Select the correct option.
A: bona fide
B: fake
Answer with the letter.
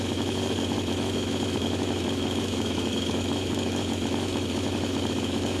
B